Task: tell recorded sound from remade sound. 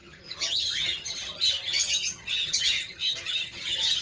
remade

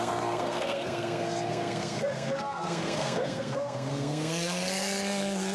remade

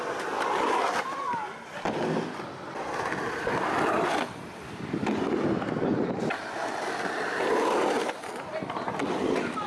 recorded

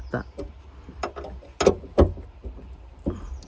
recorded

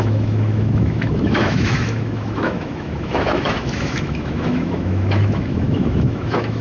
remade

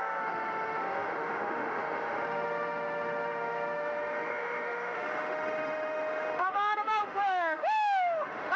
remade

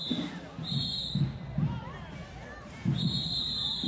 recorded